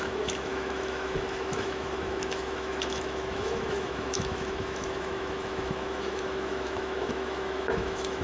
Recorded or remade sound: remade